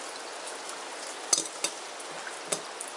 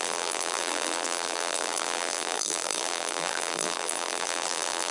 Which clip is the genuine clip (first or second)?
first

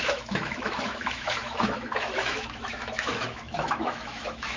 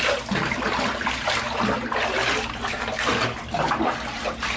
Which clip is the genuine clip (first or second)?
second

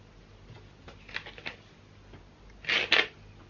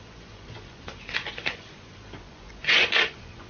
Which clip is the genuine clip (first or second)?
first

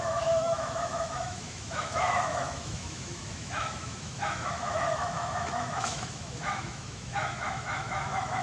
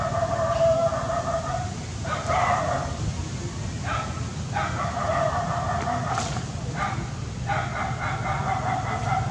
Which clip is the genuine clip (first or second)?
second